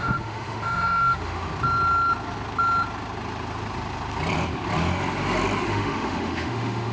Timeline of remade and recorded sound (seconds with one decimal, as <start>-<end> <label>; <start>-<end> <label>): 0.0-1.5 remade; 1.5-5.6 recorded; 5.6-6.9 remade